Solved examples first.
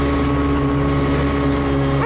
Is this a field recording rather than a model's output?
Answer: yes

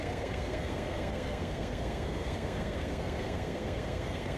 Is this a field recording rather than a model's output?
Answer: no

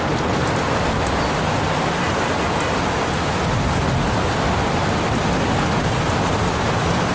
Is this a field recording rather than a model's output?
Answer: yes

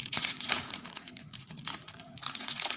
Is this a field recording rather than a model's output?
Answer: no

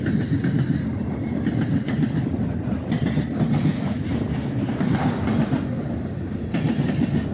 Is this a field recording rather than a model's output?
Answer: yes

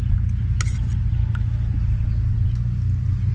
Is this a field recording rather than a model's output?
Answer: yes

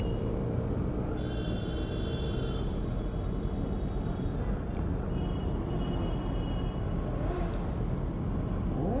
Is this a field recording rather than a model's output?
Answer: yes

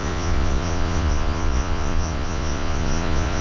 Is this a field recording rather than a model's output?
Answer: no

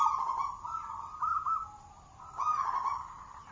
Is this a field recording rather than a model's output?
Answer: yes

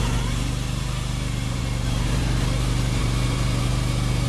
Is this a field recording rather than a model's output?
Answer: no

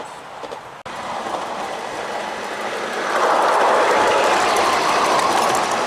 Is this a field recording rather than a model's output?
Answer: yes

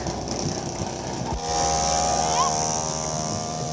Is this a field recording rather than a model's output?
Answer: yes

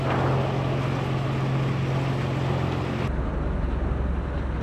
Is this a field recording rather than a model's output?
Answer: yes